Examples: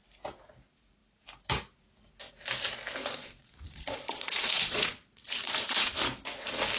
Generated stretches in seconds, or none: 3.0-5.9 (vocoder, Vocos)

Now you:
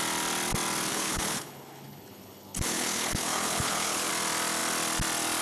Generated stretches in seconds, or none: 0.9-4.1 (codec, HILCodec)

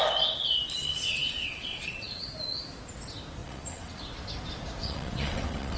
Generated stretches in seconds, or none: 0.8-2.3 (vocoder, WaveNeXt); 3.4-4.0; 4.8-5.8

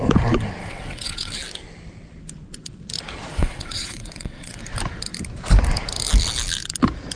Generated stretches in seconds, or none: 0.6-1.3 (vocoder, WaveNeXt); 3.3-4.6

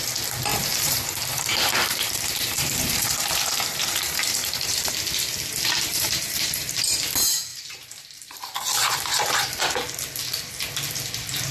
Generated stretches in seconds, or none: 0.5-4.9 (vocoder, BigVGAN v2); 5.9-6.9; 7.5-9.6

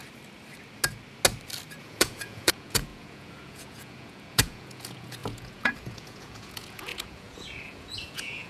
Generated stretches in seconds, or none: 1.8-8.5 (vocoder, Vocos)